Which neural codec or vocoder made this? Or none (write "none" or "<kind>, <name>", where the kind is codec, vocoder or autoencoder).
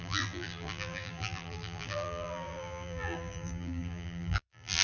vocoder, BigVGAN v2